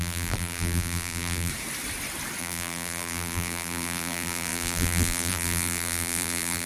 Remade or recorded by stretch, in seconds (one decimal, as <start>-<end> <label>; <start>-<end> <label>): 0.0-1.5 remade; 1.5-2.4 recorded; 2.4-6.7 remade

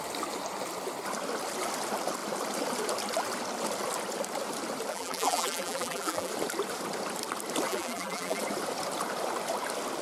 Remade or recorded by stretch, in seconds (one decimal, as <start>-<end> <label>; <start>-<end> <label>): 0.0-4.9 recorded; 4.9-6.3 remade; 6.3-7.7 recorded; 7.7-8.4 remade; 8.4-10.0 recorded

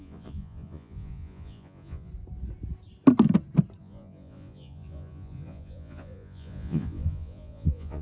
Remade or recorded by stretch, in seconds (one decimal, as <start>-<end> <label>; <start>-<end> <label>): 0.0-2.1 remade; 2.1-3.8 recorded; 3.8-8.0 remade

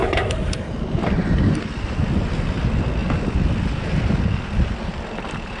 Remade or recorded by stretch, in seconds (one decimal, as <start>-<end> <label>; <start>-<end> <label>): 0.0-5.6 recorded

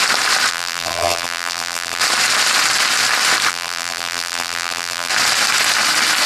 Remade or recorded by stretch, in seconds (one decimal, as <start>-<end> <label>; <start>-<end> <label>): 0.0-0.5 recorded; 0.5-2.0 remade; 2.0-3.5 recorded; 3.5-5.1 remade; 5.1-6.3 recorded

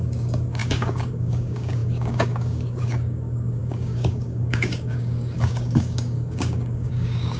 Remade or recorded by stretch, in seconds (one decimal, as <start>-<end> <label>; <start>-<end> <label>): 0.0-7.4 remade

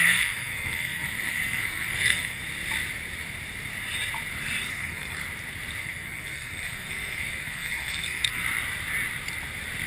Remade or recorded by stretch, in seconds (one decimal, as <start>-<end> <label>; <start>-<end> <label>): 0.0-2.4 remade; 2.4-4.7 recorded; 4.7-5.2 remade; 5.2-5.8 recorded; 5.8-8.4 remade; 8.4-9.9 recorded

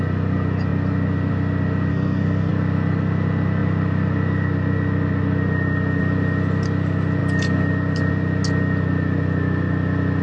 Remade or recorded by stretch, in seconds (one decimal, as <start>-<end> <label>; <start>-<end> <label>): 0.0-1.9 recorded; 1.9-2.5 remade; 2.5-10.2 recorded